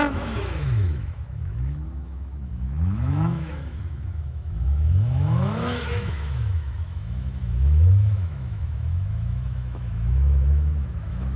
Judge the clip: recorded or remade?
remade